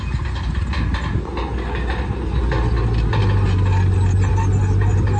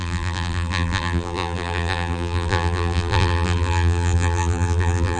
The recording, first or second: first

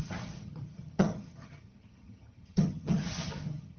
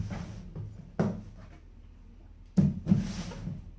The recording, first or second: second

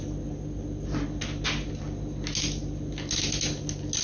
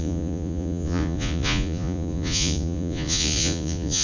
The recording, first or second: first